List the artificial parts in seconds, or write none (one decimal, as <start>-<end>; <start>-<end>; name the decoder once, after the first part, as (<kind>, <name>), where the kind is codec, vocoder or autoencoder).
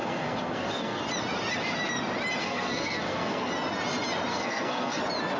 0.0-1.0 (codec, SNAC); 2.4-3.5; 4.3-5.0